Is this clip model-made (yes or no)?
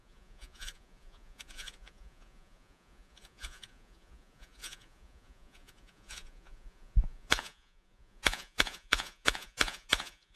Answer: yes